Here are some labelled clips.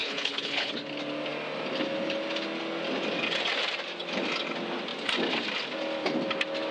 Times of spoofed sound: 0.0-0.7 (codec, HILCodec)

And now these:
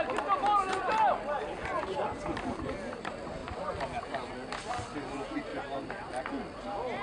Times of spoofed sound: 1.8-2.7 (vocoder, BigVGAN v2); 5.5-6.1

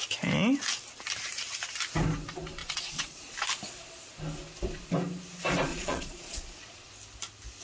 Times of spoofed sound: 2.6-3.2 (vocoder, Vocos); 5.7-6.9

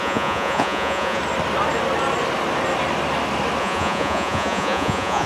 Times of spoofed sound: 0.0-1.2 (vocoder, Vocos); 3.6-5.3

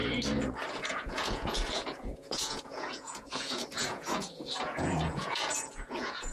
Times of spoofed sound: 0.7-6.3 (vocoder, Vocos)